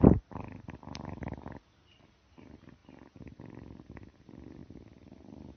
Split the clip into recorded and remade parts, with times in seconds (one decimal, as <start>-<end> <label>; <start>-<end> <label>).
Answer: 0.0-5.6 recorded